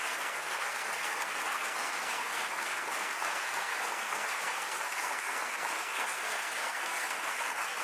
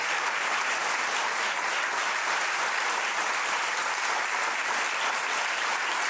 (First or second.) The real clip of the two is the second